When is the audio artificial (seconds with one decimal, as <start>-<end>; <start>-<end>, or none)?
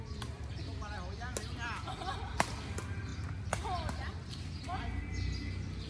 none